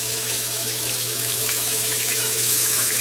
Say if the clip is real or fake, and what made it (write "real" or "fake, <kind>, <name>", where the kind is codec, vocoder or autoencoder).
fake, autoencoder, DAC-VAE